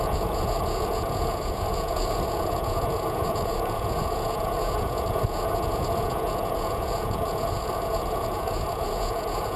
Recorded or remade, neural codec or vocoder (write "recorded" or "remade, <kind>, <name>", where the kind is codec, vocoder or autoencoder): remade, vocoder, Vocos